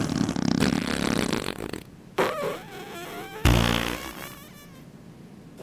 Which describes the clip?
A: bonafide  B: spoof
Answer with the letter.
A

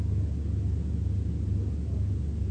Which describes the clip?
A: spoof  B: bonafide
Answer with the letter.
B